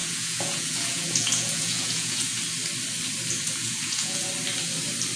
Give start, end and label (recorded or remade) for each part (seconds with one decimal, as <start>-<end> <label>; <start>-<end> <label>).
0.0-2.4 remade; 2.4-3.4 recorded; 3.4-4.3 remade; 4.3-5.2 recorded